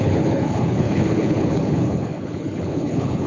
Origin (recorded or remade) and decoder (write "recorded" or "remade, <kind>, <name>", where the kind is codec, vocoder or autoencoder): remade, codec, HILCodec